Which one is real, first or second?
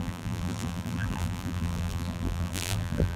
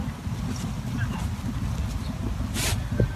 second